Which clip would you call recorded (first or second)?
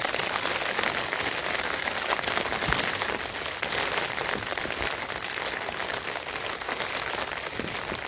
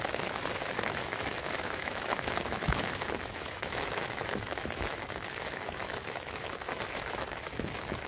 first